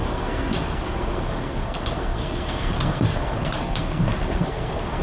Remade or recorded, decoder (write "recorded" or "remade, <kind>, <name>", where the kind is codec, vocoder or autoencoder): remade, codec, SNAC